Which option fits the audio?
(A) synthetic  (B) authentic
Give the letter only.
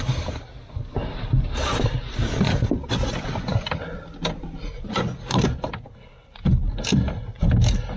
B